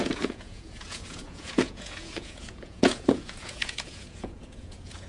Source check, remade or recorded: remade